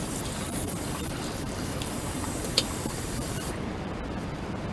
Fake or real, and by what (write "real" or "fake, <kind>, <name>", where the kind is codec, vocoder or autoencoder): fake, vocoder, BigVGAN v2